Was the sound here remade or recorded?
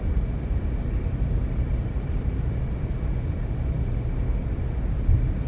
recorded